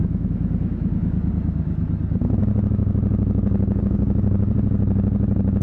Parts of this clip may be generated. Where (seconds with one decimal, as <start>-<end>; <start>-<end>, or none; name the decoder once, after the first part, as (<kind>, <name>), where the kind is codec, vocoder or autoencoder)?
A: 0.0-1.3 (autoencoder, DAC-VAE); 2.4-3.8